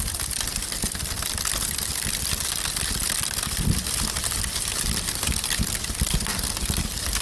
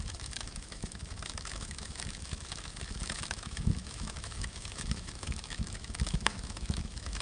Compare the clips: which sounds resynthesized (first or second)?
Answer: second